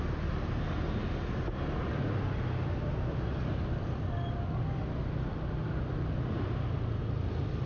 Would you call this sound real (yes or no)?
yes